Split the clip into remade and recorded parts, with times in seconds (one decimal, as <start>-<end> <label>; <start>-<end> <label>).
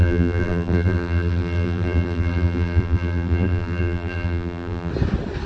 0.0-4.9 remade; 4.9-5.5 recorded